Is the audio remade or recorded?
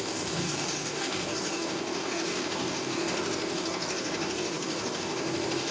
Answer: remade